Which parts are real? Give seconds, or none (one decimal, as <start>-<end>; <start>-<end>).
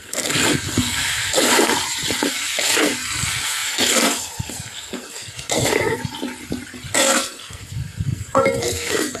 1.7-2.3; 6.0-6.9